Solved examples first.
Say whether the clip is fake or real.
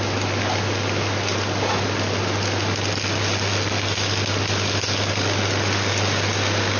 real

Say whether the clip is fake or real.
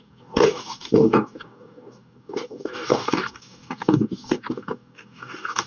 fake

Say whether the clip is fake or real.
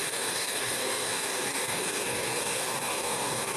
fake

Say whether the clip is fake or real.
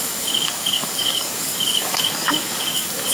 fake